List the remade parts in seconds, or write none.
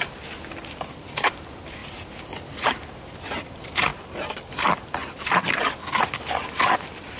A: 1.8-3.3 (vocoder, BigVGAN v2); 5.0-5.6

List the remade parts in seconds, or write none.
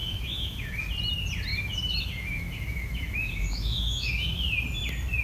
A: 0.0-0.8 (autoencoder, DAC-VAE); 1.5-4.5